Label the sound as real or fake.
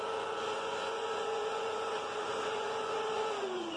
fake